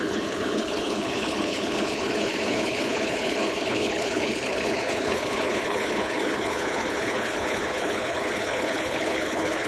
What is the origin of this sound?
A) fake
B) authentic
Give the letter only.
A